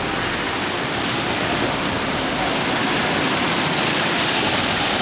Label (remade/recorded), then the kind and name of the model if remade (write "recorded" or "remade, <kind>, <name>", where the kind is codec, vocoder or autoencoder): remade, vocoder, BigVGAN v2